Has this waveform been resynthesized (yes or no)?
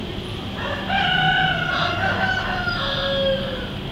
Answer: no